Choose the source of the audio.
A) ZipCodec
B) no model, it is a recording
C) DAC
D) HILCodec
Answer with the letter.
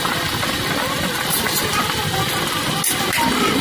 B